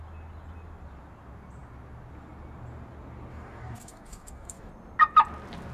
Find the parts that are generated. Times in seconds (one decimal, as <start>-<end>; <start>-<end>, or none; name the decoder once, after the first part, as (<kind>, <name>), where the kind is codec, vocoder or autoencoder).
3.3-4.7 (codec, DAC)

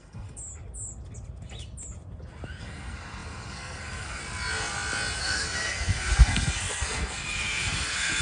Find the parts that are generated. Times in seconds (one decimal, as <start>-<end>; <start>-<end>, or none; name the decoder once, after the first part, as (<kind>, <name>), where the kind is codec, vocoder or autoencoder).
0.0-0.4 (codec, SNAC); 2.6-4.2; 5.2-8.2

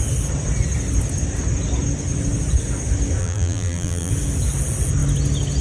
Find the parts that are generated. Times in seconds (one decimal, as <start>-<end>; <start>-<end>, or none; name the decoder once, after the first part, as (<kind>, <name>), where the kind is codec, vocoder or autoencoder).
3.2-4.1 (vocoder, BigVGAN v2)

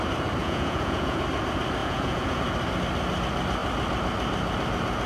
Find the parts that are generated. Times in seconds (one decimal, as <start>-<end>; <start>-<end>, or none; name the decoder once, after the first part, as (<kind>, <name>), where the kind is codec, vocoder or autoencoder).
0.4-1.2 (vocoder, Vocos); 1.8-2.4